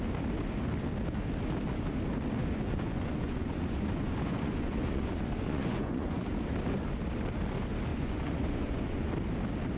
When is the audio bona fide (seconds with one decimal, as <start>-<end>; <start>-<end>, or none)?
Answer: 0.0-2.4; 6.3-7.9; 9.1-9.8